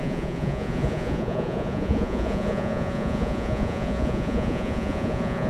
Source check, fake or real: fake